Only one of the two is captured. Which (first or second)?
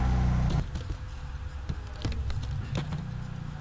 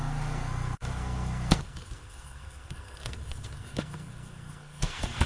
first